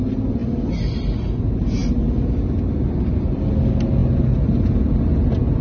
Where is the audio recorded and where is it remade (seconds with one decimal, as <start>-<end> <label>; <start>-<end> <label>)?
0.0-5.6 recorded